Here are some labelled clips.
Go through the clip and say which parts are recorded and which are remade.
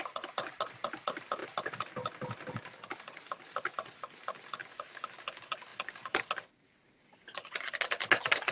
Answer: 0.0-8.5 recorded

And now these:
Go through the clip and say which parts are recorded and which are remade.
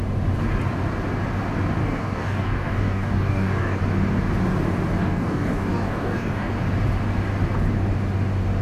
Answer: 0.0-1.8 recorded; 1.8-3.8 remade; 3.8-5.0 recorded; 5.0-6.5 remade; 6.5-8.6 recorded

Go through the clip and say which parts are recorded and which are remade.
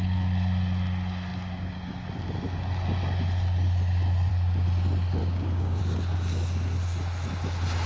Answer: 0.0-5.2 recorded; 5.2-5.8 remade; 5.8-7.9 recorded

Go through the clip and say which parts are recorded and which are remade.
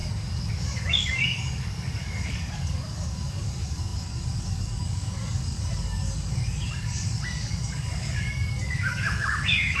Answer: 0.0-9.8 remade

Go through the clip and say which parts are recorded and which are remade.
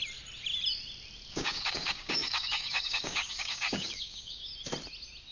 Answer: 0.0-1.3 recorded; 1.3-4.5 remade; 4.5-5.3 recorded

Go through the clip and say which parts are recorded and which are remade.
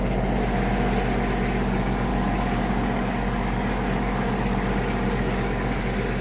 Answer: 0.0-2.1 recorded; 2.1-5.8 remade; 5.8-6.2 recorded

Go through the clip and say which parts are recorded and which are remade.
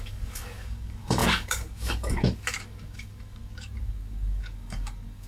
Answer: 0.0-5.3 remade